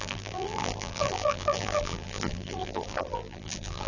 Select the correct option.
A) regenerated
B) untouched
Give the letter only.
A